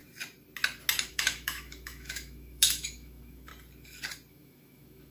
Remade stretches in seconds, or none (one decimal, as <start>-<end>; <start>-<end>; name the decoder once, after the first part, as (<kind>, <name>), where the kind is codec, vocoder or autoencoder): 1.1-3.5 (autoencoder, DAC-VAE); 4.3-5.1